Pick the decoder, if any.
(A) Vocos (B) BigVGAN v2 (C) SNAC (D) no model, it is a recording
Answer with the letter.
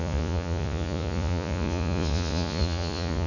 A